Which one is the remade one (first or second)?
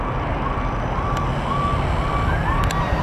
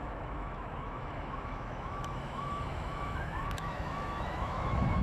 second